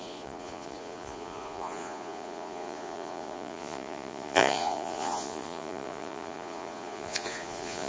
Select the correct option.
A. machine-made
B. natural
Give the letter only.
A